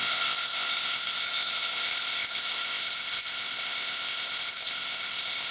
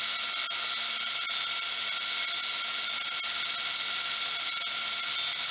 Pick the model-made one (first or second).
first